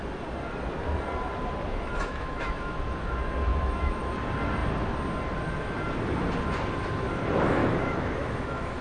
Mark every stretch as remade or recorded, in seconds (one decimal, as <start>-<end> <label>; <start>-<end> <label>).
0.0-1.7 recorded; 1.7-3.1 remade; 3.1-3.5 recorded; 3.5-4.1 remade; 4.1-7.6 recorded; 7.6-8.8 remade

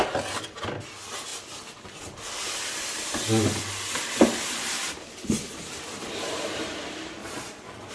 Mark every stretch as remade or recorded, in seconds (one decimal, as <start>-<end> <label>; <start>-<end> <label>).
0.0-7.2 recorded; 7.2-7.9 remade

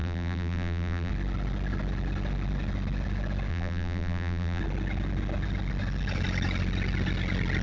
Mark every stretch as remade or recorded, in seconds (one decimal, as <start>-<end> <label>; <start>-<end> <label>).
0.0-1.1 remade; 1.1-3.5 recorded; 3.5-4.6 remade; 4.6-7.6 recorded

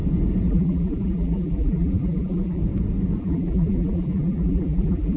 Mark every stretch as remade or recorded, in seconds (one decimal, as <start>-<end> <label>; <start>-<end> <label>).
0.0-0.5 recorded; 0.5-2.6 remade; 2.6-3.2 recorded; 3.2-5.2 remade

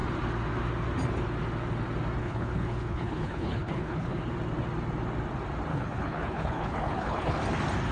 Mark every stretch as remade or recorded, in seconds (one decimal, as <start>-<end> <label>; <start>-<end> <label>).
0.0-2.2 recorded; 2.2-4.2 remade; 4.2-5.7 recorded; 5.7-7.4 remade; 7.4-7.9 recorded

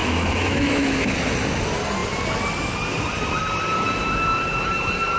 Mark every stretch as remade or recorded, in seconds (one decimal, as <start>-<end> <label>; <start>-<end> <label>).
0.0-1.1 remade; 1.1-5.2 recorded

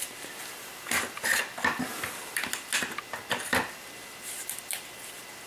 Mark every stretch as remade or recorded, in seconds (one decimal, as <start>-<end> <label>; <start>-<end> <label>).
0.0-5.5 recorded